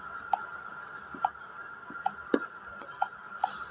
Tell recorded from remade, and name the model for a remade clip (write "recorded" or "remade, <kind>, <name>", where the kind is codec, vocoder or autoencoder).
recorded